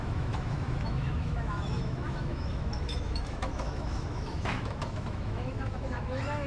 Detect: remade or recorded remade